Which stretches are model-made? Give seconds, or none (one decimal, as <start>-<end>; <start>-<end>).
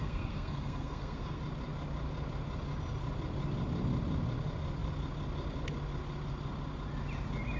0.0-1.4